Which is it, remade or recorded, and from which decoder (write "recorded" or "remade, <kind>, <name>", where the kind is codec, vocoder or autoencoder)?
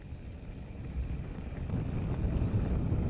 recorded